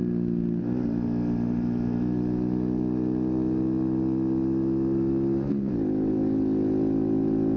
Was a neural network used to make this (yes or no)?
no